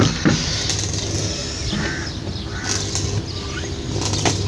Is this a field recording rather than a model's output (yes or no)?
yes